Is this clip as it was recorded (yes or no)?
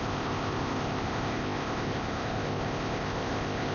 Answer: no